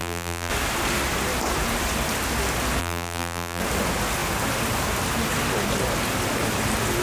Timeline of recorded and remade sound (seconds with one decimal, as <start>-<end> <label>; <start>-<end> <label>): 0.0-0.5 remade; 0.5-2.8 recorded; 2.8-3.6 remade; 3.6-7.0 recorded